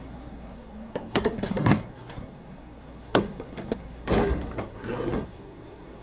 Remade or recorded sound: remade